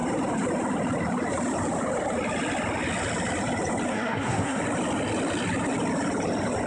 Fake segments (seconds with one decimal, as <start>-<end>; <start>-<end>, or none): 3.9-4.6